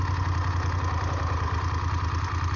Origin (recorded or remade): recorded